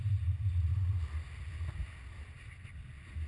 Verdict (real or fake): real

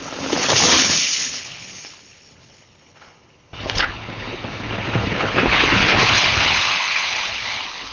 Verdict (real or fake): fake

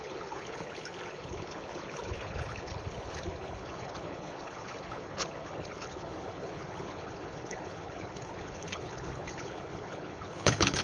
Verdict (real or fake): fake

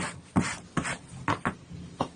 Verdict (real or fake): real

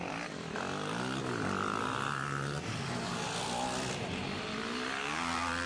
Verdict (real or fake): real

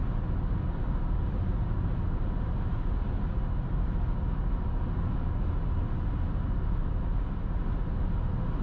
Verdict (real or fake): real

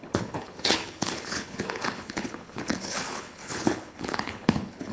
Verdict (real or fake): fake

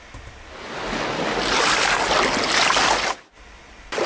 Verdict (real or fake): real